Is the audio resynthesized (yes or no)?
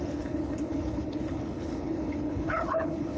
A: yes